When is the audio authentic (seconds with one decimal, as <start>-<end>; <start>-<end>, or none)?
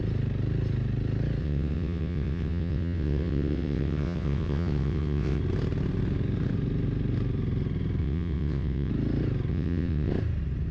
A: 0.0-1.4; 5.4-8.0; 8.9-9.5; 10.1-10.7